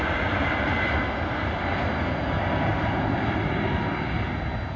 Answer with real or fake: real